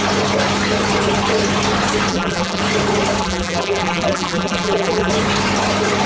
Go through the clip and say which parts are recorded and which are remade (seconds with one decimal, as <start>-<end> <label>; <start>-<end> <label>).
0.0-2.1 recorded; 2.1-2.6 remade; 2.6-3.2 recorded; 3.2-5.1 remade; 5.1-6.1 recorded